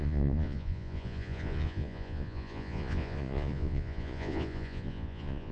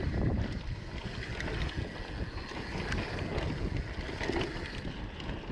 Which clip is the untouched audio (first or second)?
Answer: second